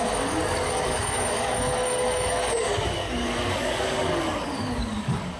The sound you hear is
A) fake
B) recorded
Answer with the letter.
A